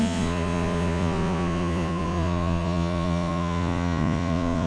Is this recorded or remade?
remade